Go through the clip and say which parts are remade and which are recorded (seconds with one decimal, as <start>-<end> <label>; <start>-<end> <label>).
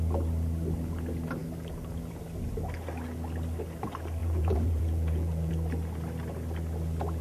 0.0-4.2 recorded; 4.2-5.5 remade; 5.5-7.2 recorded